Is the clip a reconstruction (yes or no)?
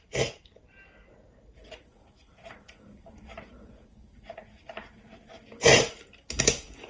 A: no